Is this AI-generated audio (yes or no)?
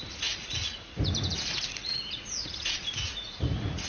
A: yes